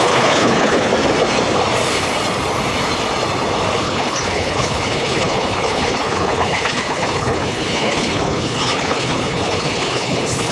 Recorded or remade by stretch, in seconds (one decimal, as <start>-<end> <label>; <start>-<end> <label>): 0.0-0.9 remade; 0.9-3.8 recorded; 3.8-10.5 remade

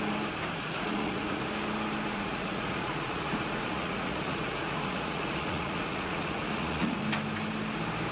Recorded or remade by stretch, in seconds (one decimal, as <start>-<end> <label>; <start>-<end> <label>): 0.0-0.6 recorded; 0.6-1.4 remade; 1.4-2.1 recorded; 2.1-7.0 remade; 7.0-8.1 recorded

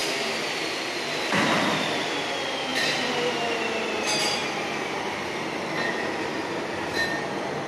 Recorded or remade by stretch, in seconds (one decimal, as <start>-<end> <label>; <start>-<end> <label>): 0.0-2.0 remade; 2.0-2.7 recorded; 2.7-3.3 remade; 3.3-7.7 recorded